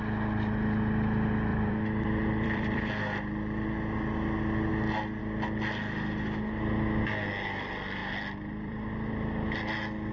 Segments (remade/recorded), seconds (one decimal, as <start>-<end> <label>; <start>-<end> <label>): 0.0-1.5 recorded; 1.5-2.9 remade; 2.9-8.0 recorded; 8.0-9.1 remade; 9.1-10.1 recorded